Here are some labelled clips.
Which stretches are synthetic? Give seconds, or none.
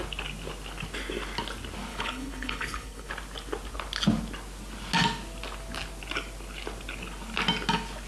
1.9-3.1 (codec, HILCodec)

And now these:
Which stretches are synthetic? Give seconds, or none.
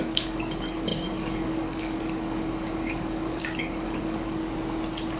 0.0-4.4 (codec, DAC)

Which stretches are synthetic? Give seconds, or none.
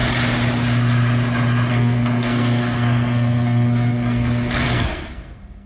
1.7-5.7 (codec, SNAC)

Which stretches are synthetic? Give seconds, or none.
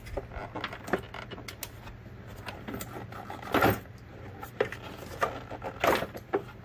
4.1-4.9 (vocoder, BigVGAN v2)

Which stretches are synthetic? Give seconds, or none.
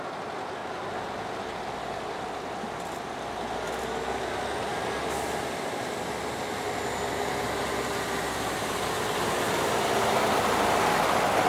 none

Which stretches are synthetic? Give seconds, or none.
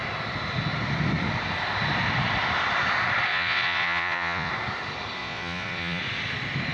3.3-4.5 (vocoder, Vocos); 5.2-6.0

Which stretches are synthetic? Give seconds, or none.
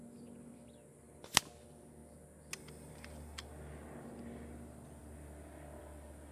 none